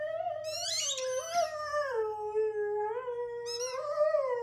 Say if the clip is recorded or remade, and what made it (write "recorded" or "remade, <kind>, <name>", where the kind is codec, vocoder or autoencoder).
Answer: recorded